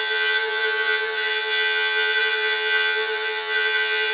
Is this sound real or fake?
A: fake